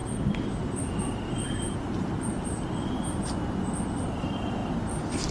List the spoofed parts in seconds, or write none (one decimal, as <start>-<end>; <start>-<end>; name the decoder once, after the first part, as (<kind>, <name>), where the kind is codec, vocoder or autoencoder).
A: none